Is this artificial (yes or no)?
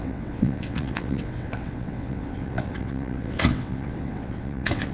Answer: yes